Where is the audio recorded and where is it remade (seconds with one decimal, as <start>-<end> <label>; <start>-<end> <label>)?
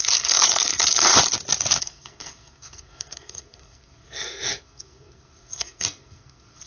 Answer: 0.0-1.1 remade; 1.1-1.8 recorded; 1.8-6.7 remade